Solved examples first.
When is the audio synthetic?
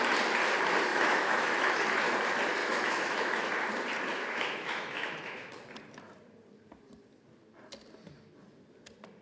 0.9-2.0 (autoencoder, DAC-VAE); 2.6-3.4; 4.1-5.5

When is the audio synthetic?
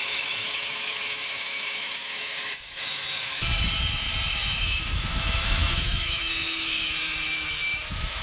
0.0-3.4 (autoencoder, DAC-VAE); 4.3-8.2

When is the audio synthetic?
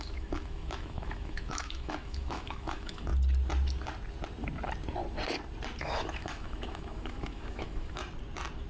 0.0-3.1 (autoencoder, DAC-VAE); 5.8-8.0